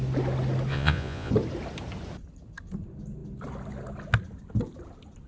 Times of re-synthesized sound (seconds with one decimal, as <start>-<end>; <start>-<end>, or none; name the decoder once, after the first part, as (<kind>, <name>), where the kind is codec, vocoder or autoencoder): 0.7-1.3 (vocoder, Vocos)